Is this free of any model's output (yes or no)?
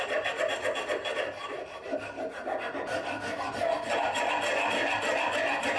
yes